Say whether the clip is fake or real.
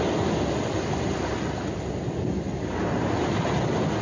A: real